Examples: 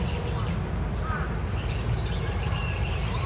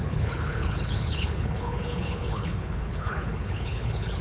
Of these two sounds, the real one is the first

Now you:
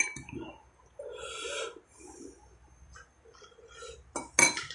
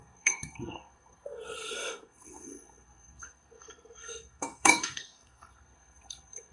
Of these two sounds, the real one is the first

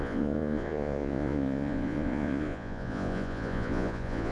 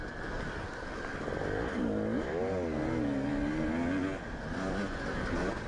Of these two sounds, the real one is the second